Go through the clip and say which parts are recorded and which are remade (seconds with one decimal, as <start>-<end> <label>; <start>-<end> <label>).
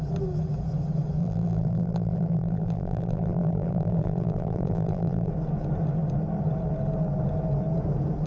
0.0-1.2 recorded; 1.2-5.3 remade; 5.3-8.3 recorded